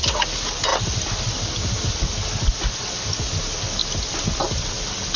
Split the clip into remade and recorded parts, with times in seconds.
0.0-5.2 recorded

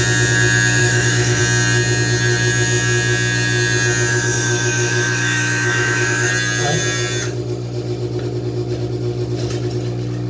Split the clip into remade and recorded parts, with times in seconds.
0.0-0.8 recorded; 0.8-1.4 remade; 1.4-4.1 recorded; 4.1-6.3 remade; 6.3-10.3 recorded

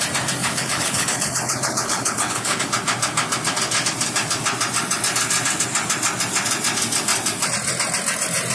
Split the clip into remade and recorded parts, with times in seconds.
0.0-0.4 recorded; 0.4-2.7 remade; 2.7-8.5 recorded

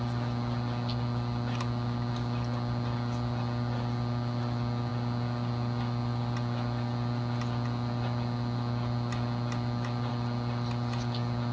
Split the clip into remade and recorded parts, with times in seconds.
0.0-11.5 recorded

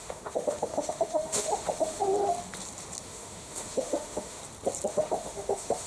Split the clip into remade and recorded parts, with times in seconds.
0.0-2.0 remade; 2.0-3.0 recorded; 3.0-4.4 remade; 4.4-4.9 recorded; 4.9-5.9 remade